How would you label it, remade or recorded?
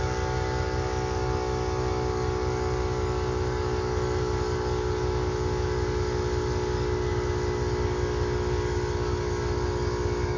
remade